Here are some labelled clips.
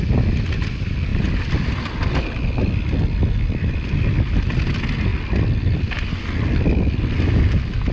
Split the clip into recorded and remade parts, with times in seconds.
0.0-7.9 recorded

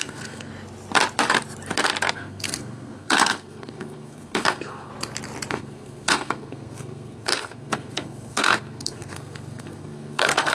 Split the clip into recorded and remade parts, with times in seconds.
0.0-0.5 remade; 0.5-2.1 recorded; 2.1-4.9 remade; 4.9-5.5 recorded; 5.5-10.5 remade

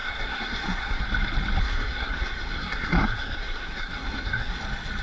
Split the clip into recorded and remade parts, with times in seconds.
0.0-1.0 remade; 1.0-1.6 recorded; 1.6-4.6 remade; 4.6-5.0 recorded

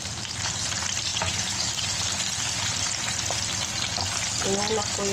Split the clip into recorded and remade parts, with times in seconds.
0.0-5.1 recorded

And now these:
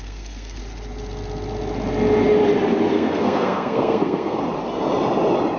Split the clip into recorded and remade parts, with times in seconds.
0.0-0.6 remade; 0.6-2.9 recorded; 2.9-4.4 remade; 4.4-5.6 recorded